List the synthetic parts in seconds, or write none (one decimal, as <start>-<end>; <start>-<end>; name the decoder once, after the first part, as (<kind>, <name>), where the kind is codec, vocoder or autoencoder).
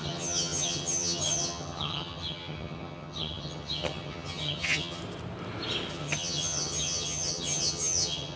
0.0-5.0 (vocoder, HiFi-GAN); 5.9-8.4